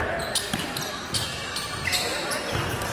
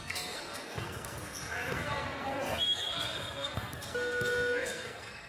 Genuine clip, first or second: first